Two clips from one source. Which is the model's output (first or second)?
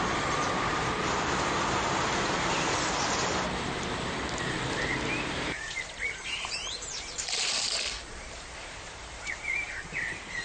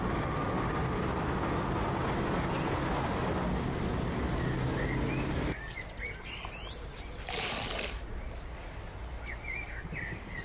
first